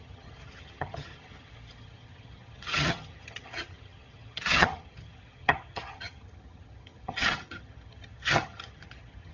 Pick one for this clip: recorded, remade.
remade